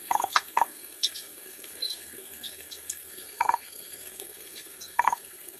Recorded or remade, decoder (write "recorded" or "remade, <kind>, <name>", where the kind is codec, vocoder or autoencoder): remade, codec, SNAC